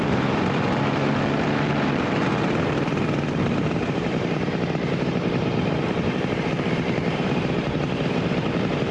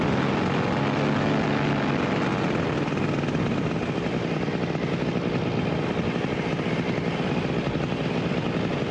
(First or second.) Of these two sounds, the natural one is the second